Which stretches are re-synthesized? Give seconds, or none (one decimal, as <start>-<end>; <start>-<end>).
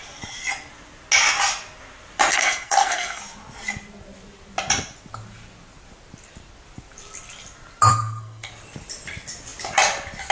2.3-3.2; 7.9-8.5